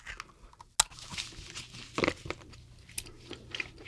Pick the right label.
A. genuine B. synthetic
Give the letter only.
A